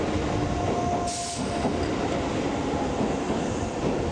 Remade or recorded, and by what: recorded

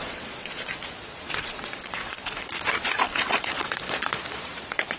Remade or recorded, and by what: remade, vocoder, Vocos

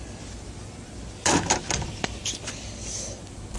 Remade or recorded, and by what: recorded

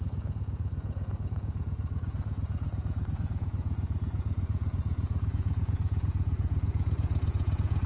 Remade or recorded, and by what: remade, vocoder, Vocos